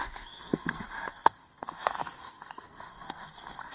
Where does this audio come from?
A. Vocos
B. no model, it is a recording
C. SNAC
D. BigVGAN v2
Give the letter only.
C